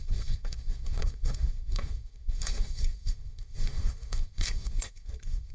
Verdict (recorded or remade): remade